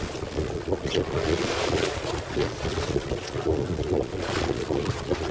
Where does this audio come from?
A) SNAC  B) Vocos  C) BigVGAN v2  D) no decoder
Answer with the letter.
B